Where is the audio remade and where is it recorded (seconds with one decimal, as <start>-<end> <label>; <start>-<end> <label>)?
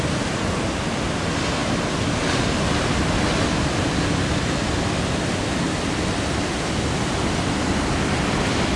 0.0-8.8 recorded